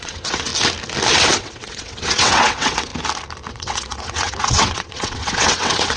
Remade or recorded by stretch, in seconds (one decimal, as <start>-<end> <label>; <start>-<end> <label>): 0.0-0.5 remade; 0.5-1.2 recorded; 1.2-2.9 remade; 2.9-3.5 recorded; 3.5-6.0 remade